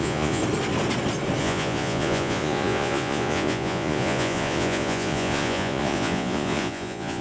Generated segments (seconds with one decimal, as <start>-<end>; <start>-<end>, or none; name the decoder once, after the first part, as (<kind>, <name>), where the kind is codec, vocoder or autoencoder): 0.0-0.4 (vocoder, Vocos); 1.4-7.2